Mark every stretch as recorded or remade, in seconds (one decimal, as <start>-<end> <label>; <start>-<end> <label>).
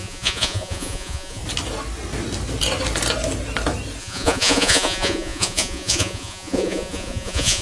0.0-1.4 remade; 1.4-4.0 recorded; 4.0-7.6 remade